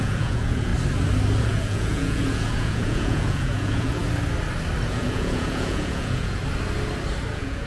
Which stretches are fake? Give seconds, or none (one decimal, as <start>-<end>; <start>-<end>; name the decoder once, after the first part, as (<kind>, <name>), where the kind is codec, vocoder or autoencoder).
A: 0.0-0.7 (vocoder, Vocos); 1.4-4.0; 4.9-6.4; 7.3-7.7